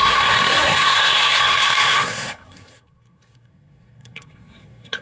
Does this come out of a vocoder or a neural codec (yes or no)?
yes